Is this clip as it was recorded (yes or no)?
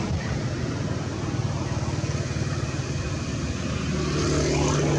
yes